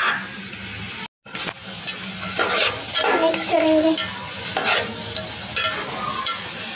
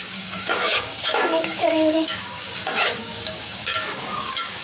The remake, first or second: second